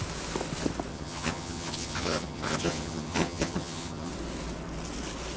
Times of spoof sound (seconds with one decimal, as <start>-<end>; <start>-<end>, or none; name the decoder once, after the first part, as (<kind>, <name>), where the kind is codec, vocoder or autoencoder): 0.9-4.1 (vocoder, HiFi-GAN)